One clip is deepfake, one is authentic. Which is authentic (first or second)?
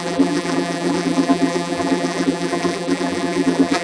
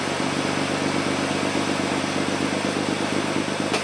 second